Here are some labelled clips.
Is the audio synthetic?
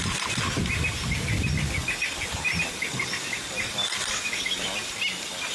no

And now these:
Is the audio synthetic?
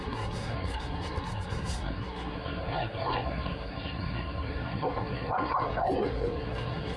yes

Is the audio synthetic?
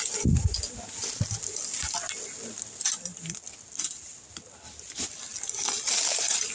no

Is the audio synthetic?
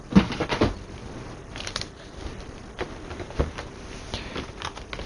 no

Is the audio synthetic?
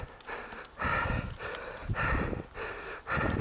no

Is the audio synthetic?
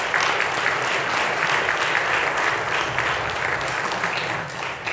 no